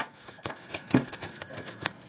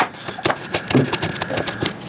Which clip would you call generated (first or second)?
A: first